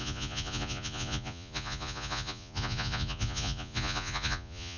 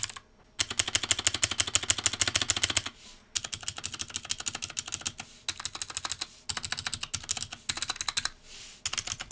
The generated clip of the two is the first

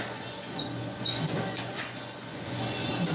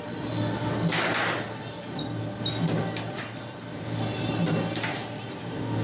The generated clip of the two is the first